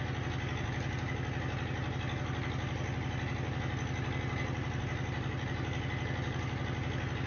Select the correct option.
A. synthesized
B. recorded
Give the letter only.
B